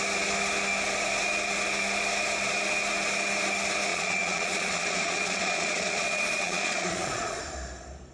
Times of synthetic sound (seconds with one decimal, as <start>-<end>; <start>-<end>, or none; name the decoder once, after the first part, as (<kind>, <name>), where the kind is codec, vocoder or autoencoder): 3.9-7.4 (vocoder, Vocos)